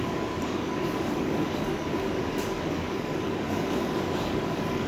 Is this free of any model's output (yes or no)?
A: no